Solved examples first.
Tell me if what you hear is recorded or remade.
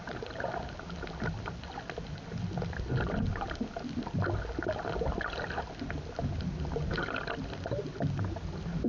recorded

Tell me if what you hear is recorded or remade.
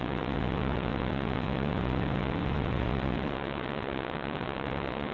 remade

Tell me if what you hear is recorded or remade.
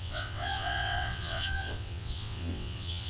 remade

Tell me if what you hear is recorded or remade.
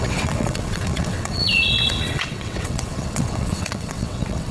remade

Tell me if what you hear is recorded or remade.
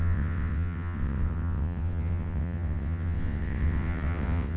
remade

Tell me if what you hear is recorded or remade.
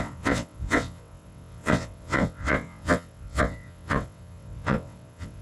remade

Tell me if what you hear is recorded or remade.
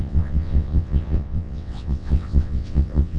remade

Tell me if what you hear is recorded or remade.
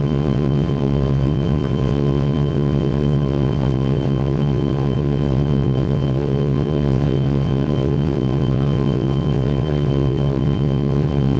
remade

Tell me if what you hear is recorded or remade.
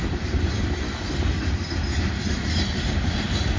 recorded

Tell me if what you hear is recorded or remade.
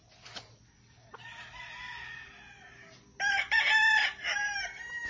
recorded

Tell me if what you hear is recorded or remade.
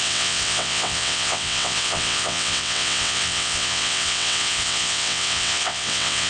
remade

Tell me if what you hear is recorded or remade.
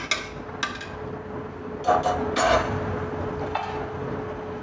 recorded